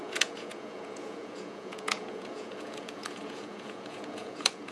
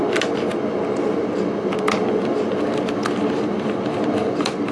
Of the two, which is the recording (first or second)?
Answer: second